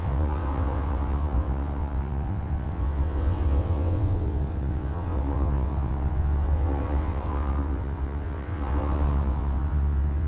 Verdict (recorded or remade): remade